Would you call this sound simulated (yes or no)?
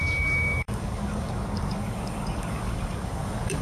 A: yes